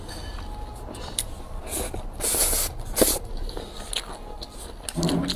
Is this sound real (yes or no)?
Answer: yes